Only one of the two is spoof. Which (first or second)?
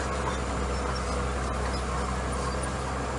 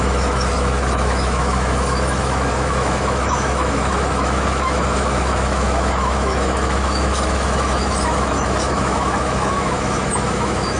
second